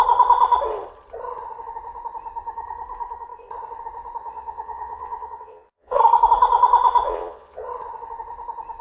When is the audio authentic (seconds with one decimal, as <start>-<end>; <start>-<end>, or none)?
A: 0.0-4.2; 6.0-7.0; 7.7-8.8